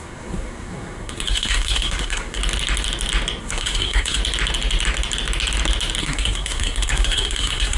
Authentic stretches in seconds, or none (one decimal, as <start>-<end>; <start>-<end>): 2.4-3.4; 4.2-6.0